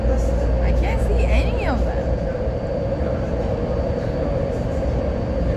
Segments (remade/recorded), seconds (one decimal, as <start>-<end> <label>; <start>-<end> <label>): 0.0-5.6 recorded